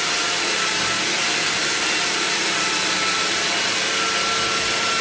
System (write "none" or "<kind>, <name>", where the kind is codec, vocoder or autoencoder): none